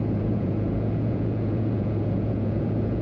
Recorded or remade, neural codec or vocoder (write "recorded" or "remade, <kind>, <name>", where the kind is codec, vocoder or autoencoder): remade, vocoder, Vocos